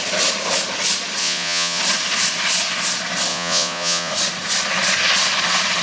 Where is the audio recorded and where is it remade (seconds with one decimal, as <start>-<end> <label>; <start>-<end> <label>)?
0.0-1.2 recorded; 1.2-1.8 remade; 1.8-3.3 recorded; 3.3-4.1 remade; 4.1-5.8 recorded